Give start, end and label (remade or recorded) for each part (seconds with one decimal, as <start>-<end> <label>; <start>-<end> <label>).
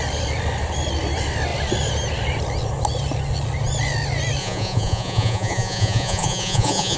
0.0-4.4 recorded; 4.4-7.0 remade